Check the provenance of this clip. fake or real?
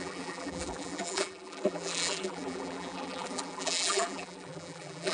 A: fake